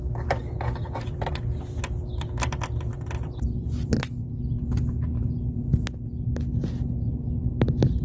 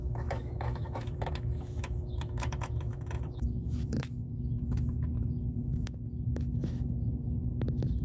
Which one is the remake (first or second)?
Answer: second